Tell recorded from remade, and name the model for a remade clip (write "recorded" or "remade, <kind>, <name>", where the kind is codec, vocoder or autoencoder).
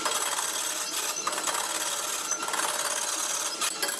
recorded